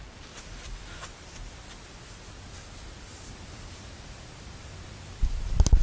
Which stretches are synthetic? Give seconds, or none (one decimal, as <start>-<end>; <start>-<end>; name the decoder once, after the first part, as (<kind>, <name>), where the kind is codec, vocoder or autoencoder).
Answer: 3.1-5.8 (vocoder, BigVGAN v2)